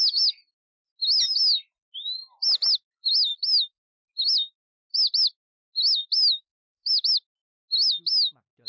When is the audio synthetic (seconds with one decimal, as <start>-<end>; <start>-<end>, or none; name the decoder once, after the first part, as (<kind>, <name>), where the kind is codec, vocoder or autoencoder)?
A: 3.3-4.1 (autoencoder, DAC-VAE); 6.2-7.0

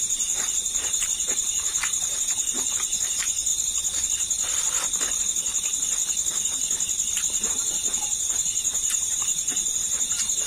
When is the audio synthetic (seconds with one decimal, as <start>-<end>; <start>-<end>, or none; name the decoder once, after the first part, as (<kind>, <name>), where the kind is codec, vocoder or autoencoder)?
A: 0.0-3.5 (vocoder, BigVGAN v2); 7.5-10.5